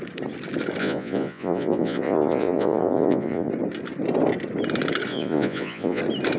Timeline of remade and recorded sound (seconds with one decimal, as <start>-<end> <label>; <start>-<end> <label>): 0.0-0.8 recorded; 0.8-3.5 remade; 3.5-5.1 recorded; 5.1-6.0 remade; 6.0-6.4 recorded